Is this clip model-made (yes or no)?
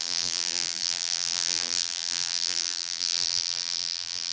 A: yes